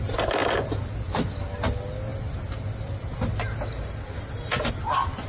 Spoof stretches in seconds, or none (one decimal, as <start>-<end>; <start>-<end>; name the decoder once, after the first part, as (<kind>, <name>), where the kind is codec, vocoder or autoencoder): none

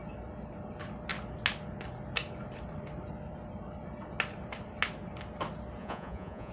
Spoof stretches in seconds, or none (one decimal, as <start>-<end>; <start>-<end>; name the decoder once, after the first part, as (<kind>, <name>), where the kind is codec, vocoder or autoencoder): 5.8-6.5 (vocoder, Vocos)

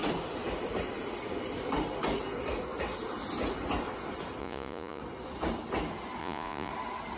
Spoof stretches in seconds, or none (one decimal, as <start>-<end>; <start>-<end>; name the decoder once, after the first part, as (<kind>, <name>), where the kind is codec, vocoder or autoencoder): 4.4-5.0 (vocoder, Vocos); 6.2-6.7